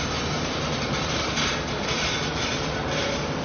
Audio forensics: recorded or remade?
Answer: remade